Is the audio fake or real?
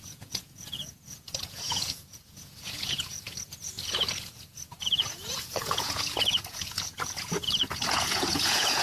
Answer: fake